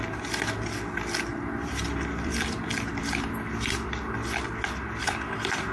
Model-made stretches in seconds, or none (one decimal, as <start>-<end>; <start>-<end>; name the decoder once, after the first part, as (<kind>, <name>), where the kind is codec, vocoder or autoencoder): 1.3-4.5 (vocoder, BigVGAN v2)